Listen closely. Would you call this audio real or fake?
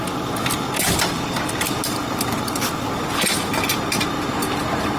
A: real